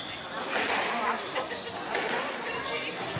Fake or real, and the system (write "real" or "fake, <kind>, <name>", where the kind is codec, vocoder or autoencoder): real